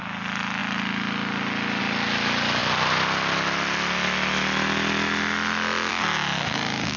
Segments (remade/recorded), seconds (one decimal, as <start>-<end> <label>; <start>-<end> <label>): 0.0-7.0 recorded